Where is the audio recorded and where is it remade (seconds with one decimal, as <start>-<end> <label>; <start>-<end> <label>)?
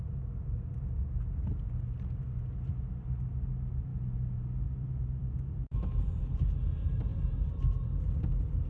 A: 0.0-3.9 recorded; 3.9-6.2 remade; 6.2-8.7 recorded